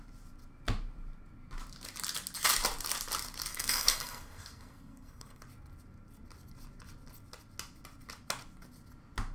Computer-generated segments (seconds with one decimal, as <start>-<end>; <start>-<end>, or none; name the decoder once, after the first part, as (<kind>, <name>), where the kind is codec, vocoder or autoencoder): 3.5-5.4 (codec, SNAC)